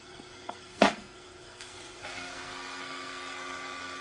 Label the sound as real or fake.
fake